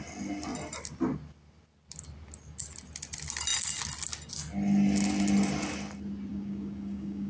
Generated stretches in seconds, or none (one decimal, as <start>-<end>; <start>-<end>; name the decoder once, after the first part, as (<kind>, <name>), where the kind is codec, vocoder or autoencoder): 6.3-7.3 (codec, DAC)